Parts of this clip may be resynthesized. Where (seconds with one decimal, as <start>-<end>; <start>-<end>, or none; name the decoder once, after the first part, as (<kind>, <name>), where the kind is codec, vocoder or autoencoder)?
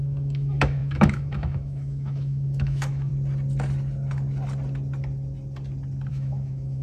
0.0-3.1 (autoencoder, DAC-VAE); 6.1-6.8